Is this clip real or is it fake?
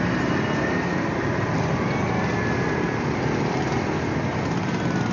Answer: real